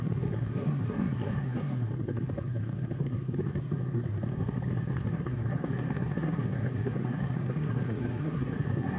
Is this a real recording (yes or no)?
no